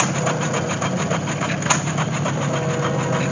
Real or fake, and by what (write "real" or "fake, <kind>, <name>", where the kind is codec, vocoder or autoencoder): real